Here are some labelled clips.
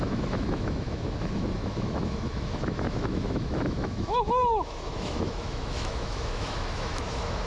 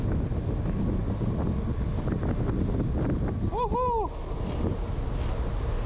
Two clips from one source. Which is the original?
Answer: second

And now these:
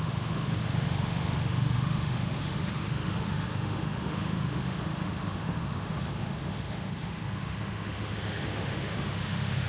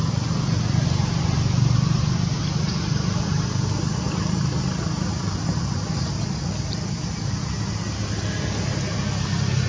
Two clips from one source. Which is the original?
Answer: second